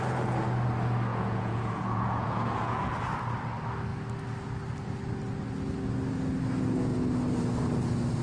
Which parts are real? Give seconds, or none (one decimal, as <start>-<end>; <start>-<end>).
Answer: 0.0-1.1; 2.9-8.2